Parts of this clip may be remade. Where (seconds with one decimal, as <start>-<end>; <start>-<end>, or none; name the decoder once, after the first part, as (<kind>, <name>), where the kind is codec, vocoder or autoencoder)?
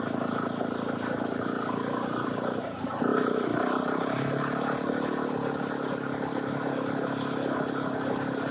0.0-8.5 (vocoder, BigVGAN v2)